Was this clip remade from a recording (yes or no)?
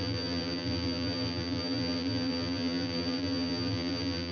yes